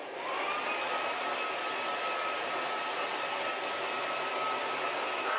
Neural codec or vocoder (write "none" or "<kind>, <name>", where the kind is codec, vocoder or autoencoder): none